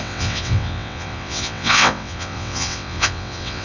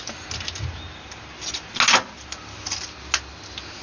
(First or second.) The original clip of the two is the second